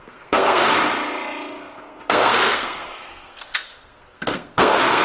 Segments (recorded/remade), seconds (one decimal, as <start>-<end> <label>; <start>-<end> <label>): 0.0-0.6 remade; 0.6-1.8 recorded; 1.8-5.0 remade